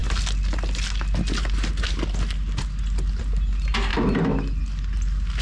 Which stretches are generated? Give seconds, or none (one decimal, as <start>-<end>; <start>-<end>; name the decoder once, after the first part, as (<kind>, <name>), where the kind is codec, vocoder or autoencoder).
none